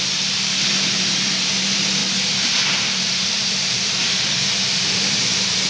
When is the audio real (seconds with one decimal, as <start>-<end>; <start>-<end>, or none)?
2.0-3.0